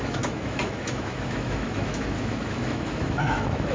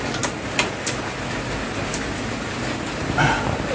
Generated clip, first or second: first